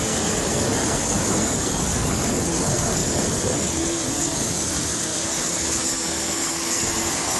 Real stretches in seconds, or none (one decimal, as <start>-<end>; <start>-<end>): none